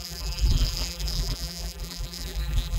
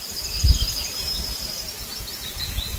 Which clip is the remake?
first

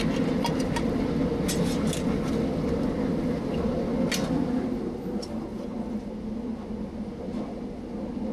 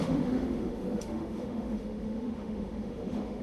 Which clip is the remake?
second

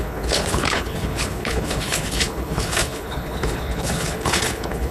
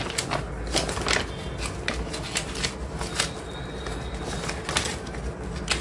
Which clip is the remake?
first